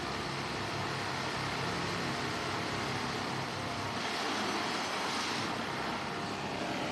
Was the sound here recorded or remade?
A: recorded